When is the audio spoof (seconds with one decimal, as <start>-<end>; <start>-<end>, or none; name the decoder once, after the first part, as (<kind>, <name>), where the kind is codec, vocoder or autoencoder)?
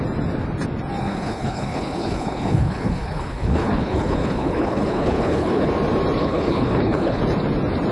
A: 1.0-5.7 (codec, HILCodec); 6.2-7.2